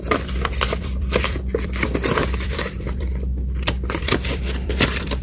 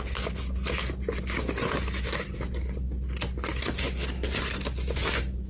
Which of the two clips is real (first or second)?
second